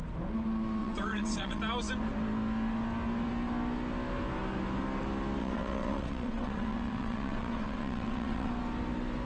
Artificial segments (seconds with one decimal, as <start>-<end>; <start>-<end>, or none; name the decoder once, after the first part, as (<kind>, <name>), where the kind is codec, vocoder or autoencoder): 0.8-1.6 (vocoder, WaveNeXt); 5.4-8.5